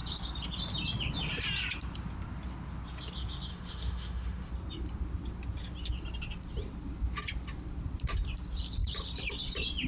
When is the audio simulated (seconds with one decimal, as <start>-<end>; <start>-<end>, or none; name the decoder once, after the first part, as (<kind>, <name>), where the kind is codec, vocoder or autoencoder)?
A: 3.5-4.5 (autoencoder, DAC-VAE)